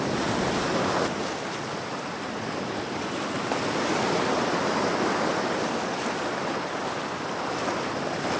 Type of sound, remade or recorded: recorded